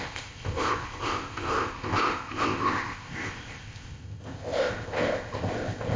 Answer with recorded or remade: remade